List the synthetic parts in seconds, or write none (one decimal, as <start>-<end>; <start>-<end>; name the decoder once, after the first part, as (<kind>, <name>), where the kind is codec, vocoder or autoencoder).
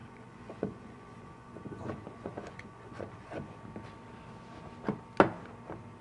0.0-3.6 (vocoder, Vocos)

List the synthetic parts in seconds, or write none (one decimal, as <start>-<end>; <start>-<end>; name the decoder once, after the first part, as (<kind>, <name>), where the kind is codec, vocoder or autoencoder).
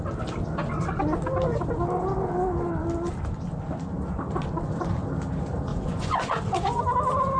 5.7-6.8 (vocoder, Vocos)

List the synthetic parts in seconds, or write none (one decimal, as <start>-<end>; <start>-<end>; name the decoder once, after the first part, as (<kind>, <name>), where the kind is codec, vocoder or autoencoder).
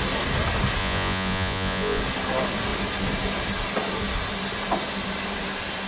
0.8-2.0 (vocoder, Vocos)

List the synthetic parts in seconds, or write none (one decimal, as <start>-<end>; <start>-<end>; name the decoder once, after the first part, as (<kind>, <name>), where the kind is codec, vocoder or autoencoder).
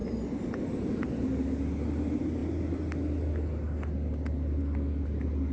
none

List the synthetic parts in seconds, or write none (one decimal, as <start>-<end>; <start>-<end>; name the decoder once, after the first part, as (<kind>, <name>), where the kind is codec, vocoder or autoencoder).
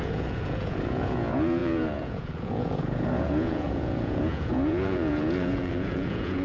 0.0-6.4 (vocoder, Vocos)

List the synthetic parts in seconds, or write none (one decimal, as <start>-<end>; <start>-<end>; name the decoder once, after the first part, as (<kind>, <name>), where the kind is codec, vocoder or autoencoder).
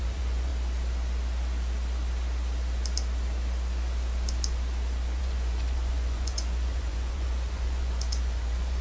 0.0-0.5 (vocoder, Vocos); 5.2-8.8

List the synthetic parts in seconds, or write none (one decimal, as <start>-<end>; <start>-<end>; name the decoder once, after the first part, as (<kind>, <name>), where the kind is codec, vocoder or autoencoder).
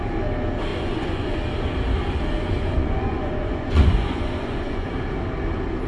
0.7-1.4 (vocoder, Vocos); 2.4-4.9